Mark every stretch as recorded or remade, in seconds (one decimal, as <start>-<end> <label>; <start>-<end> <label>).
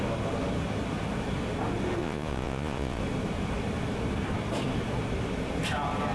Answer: 0.0-2.0 recorded; 2.0-3.0 remade; 3.0-6.1 recorded